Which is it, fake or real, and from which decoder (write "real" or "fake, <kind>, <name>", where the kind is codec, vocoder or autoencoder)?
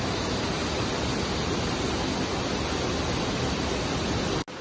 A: real